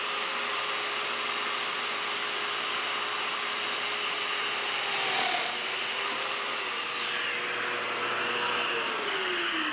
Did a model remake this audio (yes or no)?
no